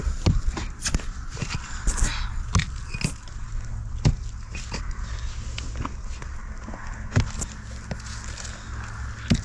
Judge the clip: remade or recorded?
recorded